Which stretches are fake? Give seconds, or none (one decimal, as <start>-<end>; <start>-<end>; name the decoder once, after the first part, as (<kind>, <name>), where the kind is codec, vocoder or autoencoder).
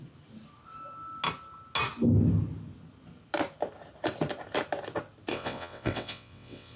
5.3-6.8 (vocoder, WaveNeXt)